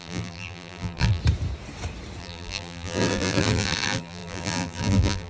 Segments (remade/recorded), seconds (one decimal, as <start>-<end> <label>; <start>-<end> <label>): 0.0-1.2 remade; 1.2-2.2 recorded; 2.2-5.3 remade